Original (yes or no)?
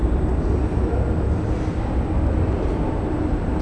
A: yes